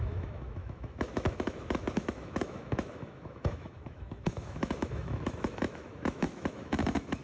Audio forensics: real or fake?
fake